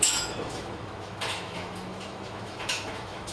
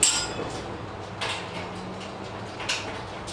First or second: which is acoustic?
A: second